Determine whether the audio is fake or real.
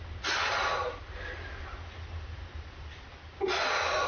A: real